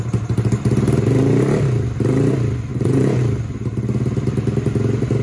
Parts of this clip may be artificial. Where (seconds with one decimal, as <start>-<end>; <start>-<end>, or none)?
2.7-3.2